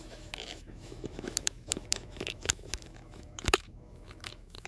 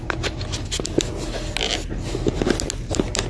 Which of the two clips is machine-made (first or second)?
first